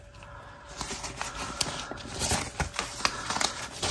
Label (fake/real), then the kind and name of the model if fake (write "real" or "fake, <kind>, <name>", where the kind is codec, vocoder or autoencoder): real